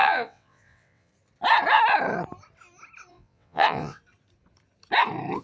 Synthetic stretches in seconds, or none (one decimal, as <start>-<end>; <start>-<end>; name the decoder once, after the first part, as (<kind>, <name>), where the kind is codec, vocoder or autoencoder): 0.0-1.1 (vocoder, WaveNeXt); 3.1-4.0